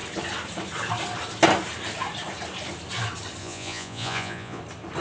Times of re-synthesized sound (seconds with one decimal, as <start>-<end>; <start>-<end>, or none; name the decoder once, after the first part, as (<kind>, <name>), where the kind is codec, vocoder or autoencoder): 3.4-4.6 (vocoder, Vocos)